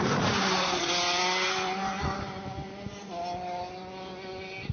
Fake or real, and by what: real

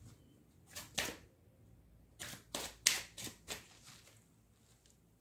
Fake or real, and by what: real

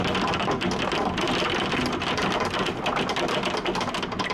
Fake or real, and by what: real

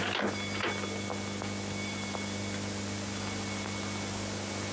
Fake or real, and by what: real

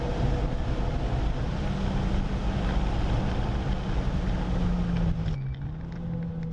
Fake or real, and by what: real